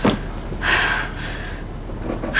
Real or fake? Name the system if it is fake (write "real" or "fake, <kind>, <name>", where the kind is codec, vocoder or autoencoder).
real